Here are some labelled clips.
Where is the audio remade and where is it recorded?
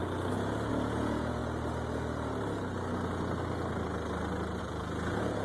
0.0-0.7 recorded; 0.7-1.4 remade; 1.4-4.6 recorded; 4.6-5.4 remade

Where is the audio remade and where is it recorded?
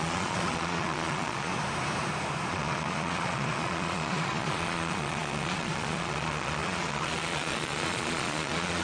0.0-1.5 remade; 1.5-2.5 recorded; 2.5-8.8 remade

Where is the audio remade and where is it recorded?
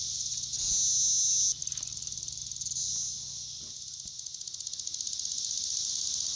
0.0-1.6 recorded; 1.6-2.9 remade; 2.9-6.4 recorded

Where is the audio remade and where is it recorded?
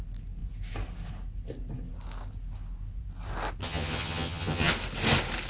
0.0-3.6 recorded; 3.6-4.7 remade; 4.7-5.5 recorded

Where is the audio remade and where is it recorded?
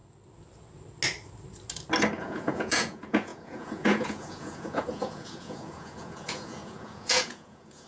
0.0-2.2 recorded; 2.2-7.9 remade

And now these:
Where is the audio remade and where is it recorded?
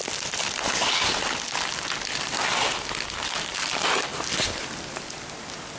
0.0-5.8 recorded